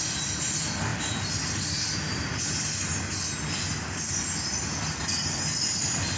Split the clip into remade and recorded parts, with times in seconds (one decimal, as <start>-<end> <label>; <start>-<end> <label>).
0.0-6.2 recorded